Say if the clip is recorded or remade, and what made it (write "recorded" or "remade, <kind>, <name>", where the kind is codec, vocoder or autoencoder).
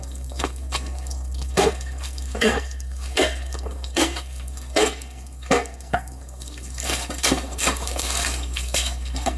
remade, codec, SNAC